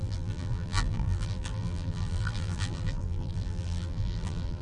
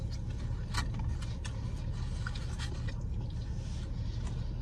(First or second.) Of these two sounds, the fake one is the first